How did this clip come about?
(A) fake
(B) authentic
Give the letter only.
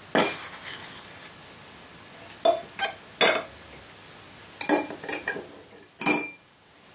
B